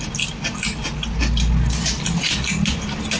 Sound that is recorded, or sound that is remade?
recorded